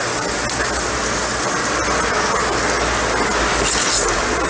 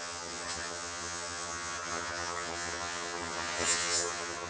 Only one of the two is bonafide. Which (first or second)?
first